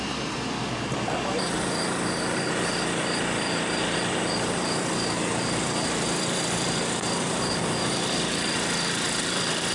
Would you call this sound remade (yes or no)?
yes